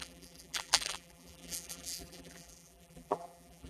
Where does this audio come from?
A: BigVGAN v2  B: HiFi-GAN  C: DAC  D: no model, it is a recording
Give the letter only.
A